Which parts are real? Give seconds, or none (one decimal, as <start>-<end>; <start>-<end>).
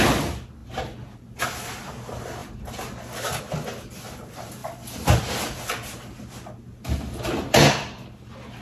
0.0-8.6